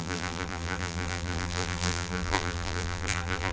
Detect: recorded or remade remade